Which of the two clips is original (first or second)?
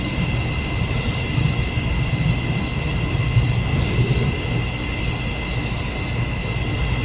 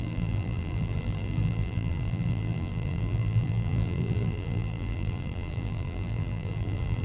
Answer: first